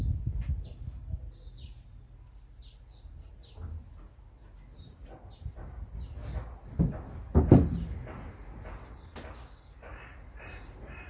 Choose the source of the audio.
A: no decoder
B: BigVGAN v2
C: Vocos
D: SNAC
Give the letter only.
A